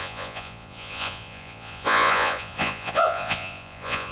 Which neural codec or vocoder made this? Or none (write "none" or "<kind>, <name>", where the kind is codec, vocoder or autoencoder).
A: vocoder, Vocos